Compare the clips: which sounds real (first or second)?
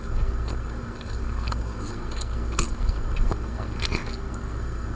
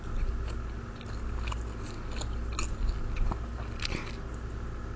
second